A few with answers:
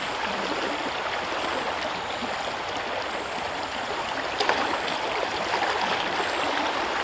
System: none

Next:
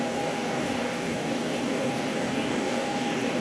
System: codec, DAC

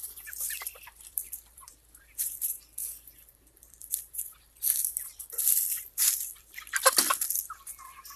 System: vocoder, BigVGAN v2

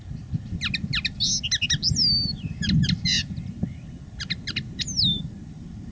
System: none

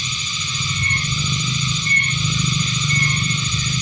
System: none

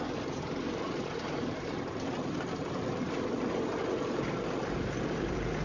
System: none